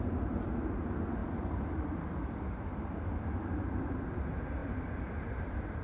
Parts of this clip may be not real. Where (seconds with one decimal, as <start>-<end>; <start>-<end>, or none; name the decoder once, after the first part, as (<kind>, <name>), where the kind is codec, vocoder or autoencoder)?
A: 1.2-3.9 (vocoder, BigVGAN v2); 4.6-5.8